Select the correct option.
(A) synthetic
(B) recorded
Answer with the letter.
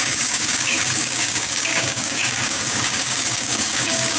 A